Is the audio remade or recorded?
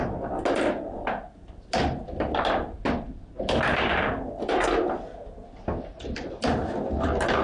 recorded